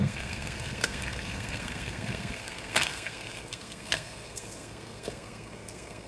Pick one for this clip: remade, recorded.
remade